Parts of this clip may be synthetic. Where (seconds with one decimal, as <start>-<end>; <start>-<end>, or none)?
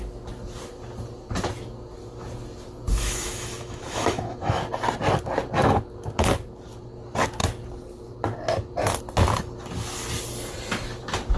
2.9-4.6